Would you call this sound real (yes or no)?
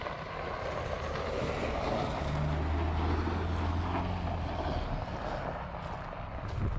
yes